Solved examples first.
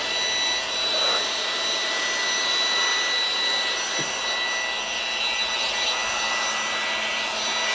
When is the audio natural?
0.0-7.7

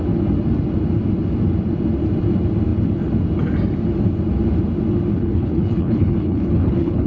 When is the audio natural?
0.0-5.1

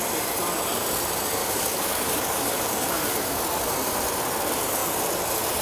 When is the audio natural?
0.0-1.4; 3.4-5.6

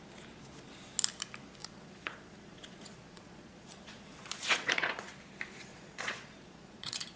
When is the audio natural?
0.0-1.6; 5.1-5.7